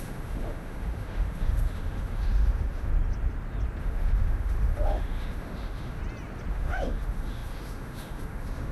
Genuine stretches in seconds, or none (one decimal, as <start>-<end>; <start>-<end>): 2.9-3.8; 6.0-6.5

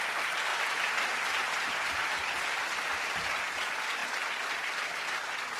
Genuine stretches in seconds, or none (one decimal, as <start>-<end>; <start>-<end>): 0.0-0.5; 3.5-4.0

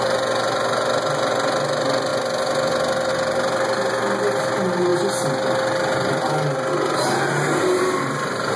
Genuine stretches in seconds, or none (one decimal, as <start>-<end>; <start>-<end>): 0.0-8.6